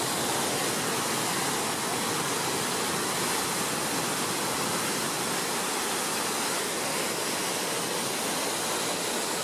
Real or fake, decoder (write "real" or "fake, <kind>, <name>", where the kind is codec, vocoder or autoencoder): real